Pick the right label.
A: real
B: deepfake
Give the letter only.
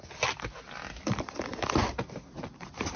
A